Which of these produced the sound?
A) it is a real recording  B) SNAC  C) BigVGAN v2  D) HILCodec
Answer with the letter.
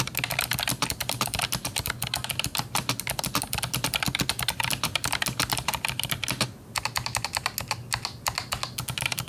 A